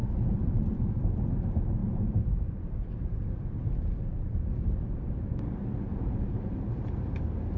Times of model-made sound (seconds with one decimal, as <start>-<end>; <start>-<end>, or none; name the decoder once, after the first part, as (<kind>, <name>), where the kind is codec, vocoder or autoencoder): 1.8-2.7 (vocoder, BigVGAN v2); 5.9-7.1